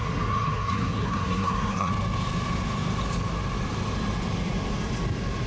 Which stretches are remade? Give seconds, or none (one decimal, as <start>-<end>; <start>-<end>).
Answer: 0.0-1.9

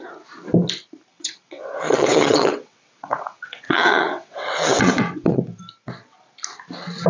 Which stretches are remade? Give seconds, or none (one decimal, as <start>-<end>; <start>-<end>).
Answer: 1.1-5.4

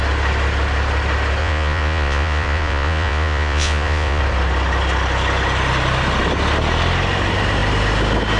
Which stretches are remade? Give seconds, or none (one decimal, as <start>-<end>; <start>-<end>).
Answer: 1.4-4.2

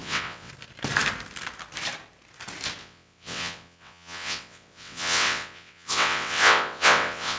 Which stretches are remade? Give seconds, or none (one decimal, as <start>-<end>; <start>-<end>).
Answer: 0.0-0.5; 2.8-7.4

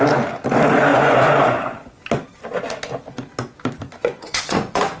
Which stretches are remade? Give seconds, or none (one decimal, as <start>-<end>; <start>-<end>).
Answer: 0.8-2.0; 4.0-5.0

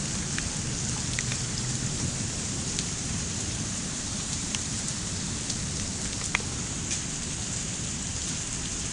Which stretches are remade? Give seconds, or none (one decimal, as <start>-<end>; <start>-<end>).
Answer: 1.3-5.2